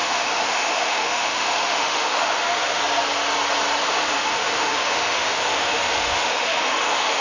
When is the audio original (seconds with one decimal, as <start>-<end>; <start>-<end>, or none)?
2.8-3.8